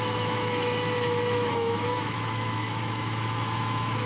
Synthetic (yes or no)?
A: yes